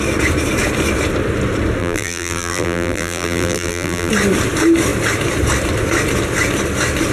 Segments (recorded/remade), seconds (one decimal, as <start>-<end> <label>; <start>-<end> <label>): 0.0-1.8 recorded; 1.8-4.1 remade; 4.1-7.1 recorded